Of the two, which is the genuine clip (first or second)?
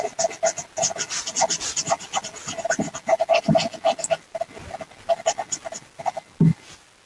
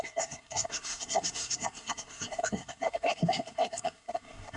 first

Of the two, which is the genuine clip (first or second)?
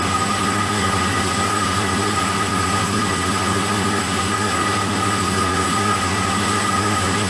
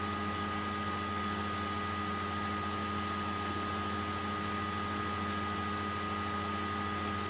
second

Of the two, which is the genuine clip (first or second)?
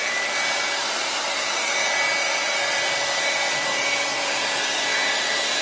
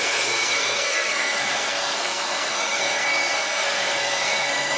first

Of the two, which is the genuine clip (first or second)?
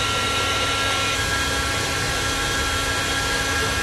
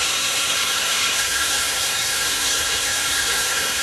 first